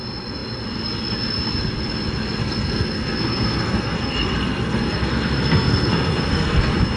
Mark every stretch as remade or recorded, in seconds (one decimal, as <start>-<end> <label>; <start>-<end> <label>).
0.0-2.4 recorded; 2.4-6.6 remade; 6.6-7.0 recorded

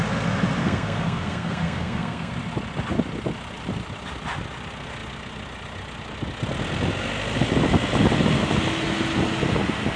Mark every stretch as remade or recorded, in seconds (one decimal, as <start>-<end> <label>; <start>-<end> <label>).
0.0-0.6 recorded; 0.6-2.3 remade; 2.3-10.0 recorded

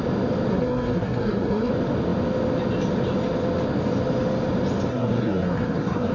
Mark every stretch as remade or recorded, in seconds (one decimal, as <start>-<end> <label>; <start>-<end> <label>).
0.0-0.5 recorded; 0.5-1.7 remade; 1.7-4.9 recorded; 4.9-6.1 remade

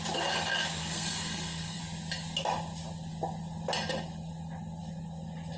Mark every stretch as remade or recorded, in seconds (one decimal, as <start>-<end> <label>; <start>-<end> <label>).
0.0-0.8 recorded; 0.8-1.8 remade; 1.8-5.6 recorded

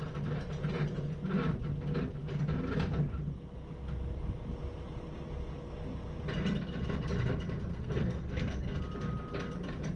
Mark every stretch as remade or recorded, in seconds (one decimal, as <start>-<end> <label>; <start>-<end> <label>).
0.0-7.7 recorded; 7.7-8.8 remade; 8.8-10.0 recorded

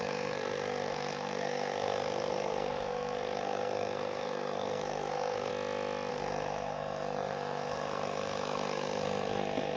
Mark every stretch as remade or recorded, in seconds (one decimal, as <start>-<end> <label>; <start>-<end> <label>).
0.0-5.5 remade; 5.5-6.1 recorded; 6.1-9.8 remade

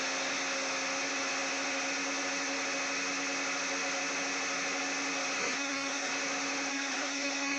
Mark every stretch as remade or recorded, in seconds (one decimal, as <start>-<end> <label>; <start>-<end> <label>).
0.0-5.4 recorded; 5.4-6.1 remade; 6.1-6.7 recorded; 6.7-7.6 remade

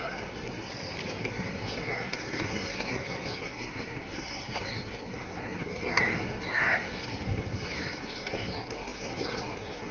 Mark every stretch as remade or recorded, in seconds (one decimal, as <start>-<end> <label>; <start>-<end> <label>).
0.0-0.7 remade; 0.7-1.2 recorded; 1.2-9.9 remade